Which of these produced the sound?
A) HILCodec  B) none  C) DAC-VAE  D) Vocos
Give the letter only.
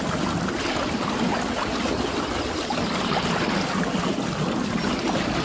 B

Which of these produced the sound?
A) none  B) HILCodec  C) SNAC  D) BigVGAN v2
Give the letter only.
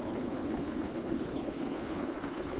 B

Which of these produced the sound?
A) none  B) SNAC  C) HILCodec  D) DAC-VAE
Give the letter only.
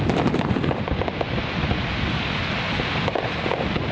A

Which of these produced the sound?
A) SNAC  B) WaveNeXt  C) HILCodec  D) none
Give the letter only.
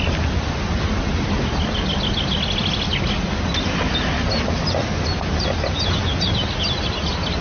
D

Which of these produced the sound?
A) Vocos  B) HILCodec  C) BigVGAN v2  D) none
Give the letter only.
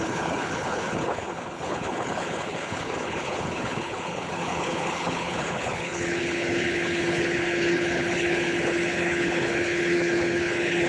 B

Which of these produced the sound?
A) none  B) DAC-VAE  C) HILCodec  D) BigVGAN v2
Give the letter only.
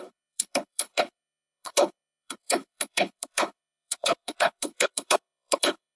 C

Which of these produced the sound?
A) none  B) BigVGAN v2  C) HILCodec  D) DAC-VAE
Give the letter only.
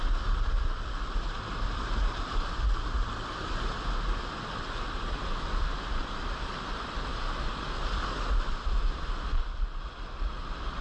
A